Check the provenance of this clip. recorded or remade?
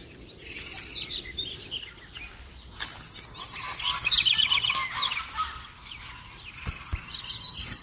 recorded